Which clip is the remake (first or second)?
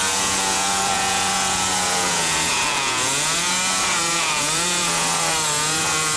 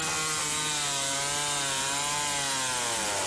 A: first